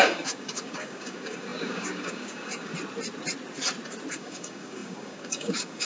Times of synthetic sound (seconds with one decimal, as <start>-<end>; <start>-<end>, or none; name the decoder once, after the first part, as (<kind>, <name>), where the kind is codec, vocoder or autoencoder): 0.0-2.7 (codec, DAC); 4.1-5.8